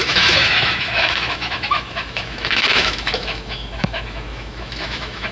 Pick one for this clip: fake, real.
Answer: fake